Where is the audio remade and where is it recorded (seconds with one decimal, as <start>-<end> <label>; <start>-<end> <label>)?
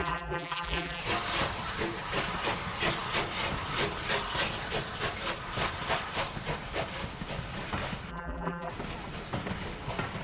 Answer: 0.0-1.0 remade; 1.0-8.1 recorded; 8.1-8.7 remade; 8.7-10.2 recorded